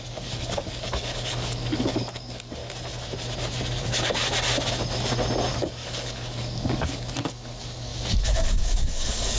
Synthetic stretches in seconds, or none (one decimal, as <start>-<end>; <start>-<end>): 0.0-2.6; 3.8-4.2; 5.5-7.9; 8.5-9.4